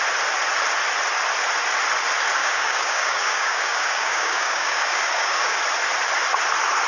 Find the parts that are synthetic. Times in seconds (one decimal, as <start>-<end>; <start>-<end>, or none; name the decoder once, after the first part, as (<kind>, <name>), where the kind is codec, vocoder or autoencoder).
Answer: 2.4-5.6 (codec, DAC)